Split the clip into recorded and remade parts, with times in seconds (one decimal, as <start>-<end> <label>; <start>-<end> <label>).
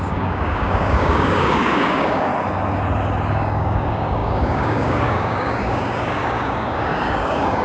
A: 0.0-2.3 remade; 2.3-3.3 recorded; 3.3-7.6 remade